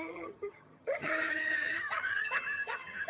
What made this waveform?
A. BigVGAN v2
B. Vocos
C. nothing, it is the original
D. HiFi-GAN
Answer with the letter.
D